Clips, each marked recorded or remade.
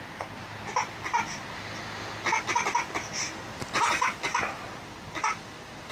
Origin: recorded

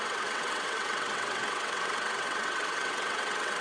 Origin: remade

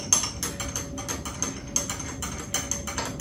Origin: recorded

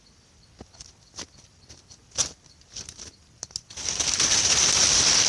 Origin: recorded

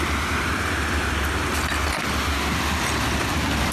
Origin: recorded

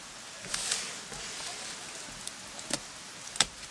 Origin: recorded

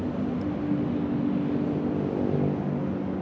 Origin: recorded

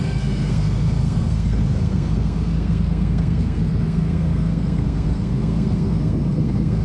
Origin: remade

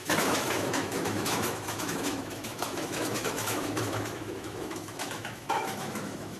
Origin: remade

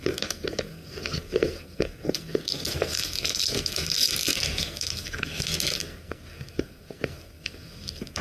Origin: remade